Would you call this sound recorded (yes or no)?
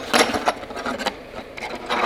yes